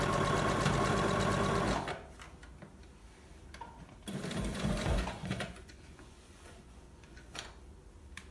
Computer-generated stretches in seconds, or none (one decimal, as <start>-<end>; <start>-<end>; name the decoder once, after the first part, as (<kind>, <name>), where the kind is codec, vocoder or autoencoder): 4.5-7.5 (vocoder, Vocos)